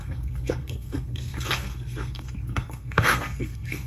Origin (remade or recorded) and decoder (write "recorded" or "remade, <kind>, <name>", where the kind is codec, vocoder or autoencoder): remade, codec, SNAC